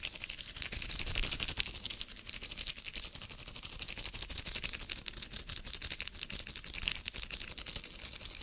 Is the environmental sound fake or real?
real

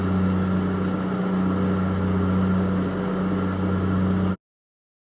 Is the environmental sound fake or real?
real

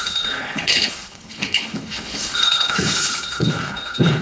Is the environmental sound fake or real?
fake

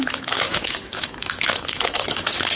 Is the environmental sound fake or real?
fake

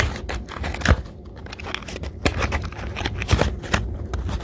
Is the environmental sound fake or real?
real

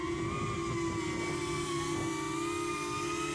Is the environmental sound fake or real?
real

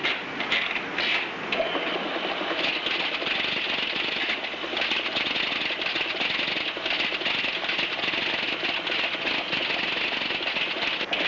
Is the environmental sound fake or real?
real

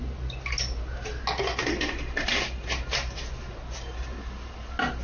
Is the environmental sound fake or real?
real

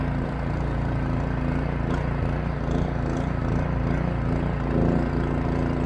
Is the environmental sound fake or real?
real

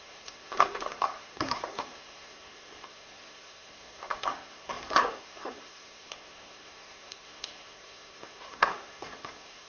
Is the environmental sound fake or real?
fake